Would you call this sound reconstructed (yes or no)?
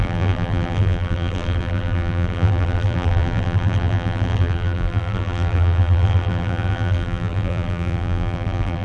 yes